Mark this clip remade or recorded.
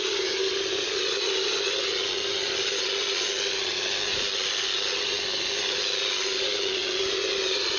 recorded